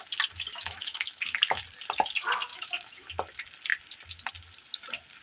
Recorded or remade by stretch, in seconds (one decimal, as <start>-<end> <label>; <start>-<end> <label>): 0.0-0.5 recorded; 0.5-1.6 remade; 1.6-2.5 recorded; 2.5-3.1 remade; 3.1-5.2 recorded